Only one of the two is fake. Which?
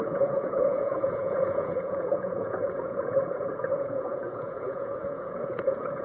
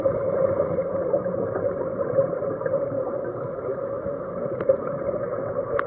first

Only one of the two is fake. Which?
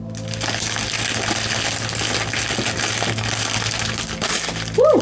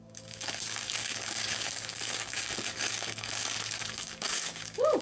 second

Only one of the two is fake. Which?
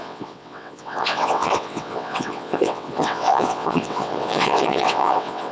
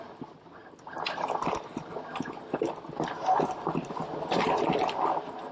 first